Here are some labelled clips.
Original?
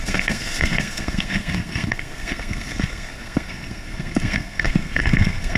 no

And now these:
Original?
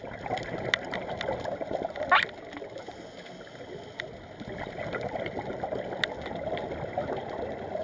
yes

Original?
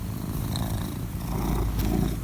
yes